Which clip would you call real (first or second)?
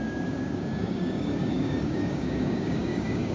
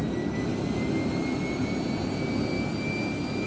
second